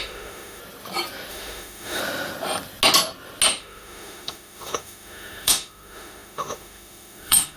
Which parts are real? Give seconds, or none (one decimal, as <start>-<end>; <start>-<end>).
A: 0.6-1.3; 2.0-3.6